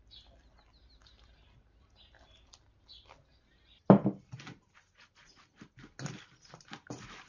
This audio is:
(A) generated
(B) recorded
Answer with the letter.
B